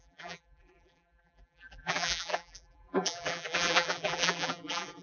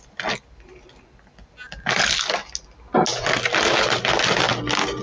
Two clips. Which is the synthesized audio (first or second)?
first